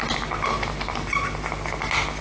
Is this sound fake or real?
real